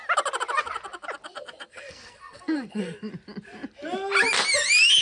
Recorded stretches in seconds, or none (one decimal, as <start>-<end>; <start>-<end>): 0.0-1.7; 3.1-5.0